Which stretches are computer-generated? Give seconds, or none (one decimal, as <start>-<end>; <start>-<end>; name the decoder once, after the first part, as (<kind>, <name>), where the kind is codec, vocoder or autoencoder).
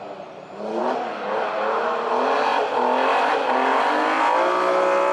none